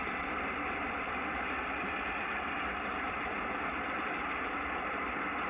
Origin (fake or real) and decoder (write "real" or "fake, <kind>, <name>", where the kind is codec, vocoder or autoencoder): fake, vocoder, BigVGAN v2